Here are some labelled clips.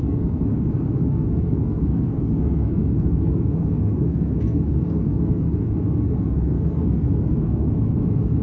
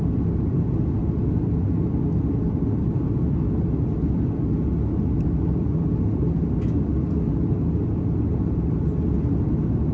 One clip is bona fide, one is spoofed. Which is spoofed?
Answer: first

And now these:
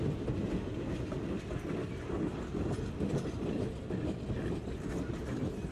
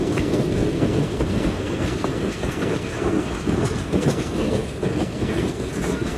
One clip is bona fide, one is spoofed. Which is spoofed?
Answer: second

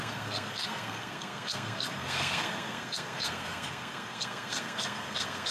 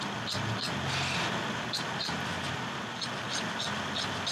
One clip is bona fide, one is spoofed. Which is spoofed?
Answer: first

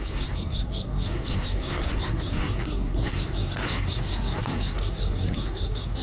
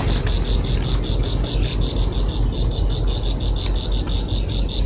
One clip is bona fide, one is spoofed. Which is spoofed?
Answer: first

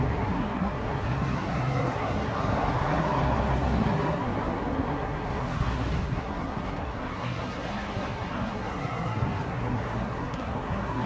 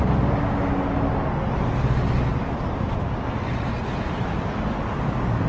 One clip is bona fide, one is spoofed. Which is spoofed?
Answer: first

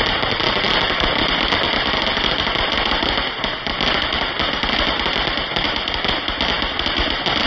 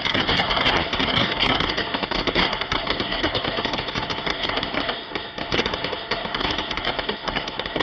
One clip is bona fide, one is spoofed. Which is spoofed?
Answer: second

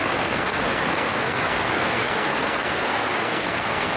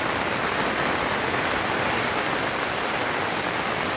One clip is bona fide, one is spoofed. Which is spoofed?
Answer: first